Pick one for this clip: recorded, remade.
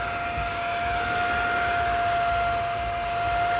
recorded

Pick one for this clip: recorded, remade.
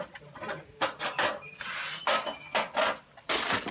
recorded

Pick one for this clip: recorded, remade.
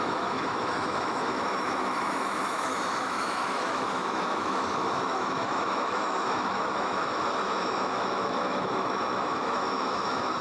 remade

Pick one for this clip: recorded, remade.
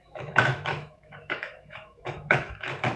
remade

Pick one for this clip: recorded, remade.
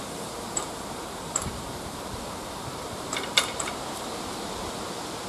remade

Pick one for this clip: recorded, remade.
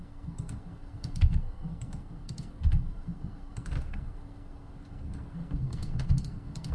remade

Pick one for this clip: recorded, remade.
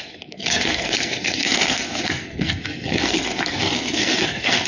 remade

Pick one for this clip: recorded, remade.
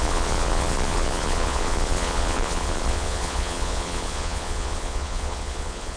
remade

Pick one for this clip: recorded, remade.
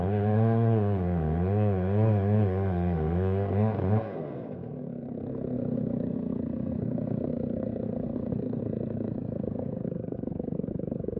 remade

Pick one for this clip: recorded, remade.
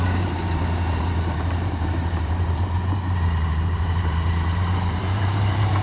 remade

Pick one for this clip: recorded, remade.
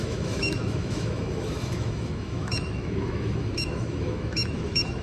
remade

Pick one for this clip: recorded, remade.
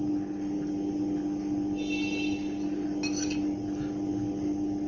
recorded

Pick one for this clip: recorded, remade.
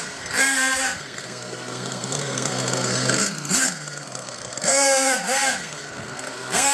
remade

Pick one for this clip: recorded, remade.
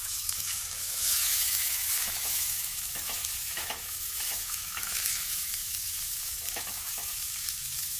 remade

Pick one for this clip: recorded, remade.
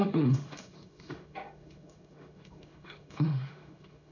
remade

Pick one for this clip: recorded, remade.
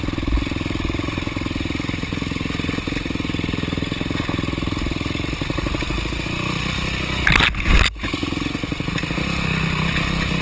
recorded